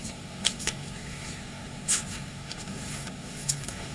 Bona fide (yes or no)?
no